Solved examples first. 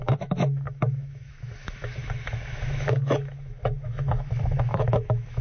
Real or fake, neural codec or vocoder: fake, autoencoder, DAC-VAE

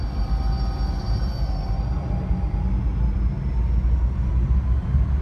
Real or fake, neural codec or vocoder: real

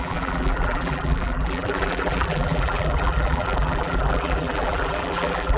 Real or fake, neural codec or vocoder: fake, vocoder, BigVGAN v2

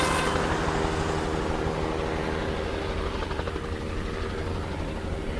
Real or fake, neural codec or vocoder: real